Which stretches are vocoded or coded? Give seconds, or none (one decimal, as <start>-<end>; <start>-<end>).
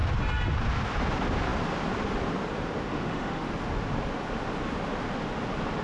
2.9-3.5